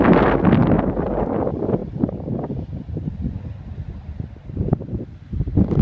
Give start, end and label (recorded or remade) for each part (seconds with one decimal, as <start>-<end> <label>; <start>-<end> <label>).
0.0-1.8 recorded; 1.8-5.3 remade; 5.3-5.8 recorded